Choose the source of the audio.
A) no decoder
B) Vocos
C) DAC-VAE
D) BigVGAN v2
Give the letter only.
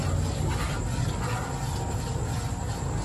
A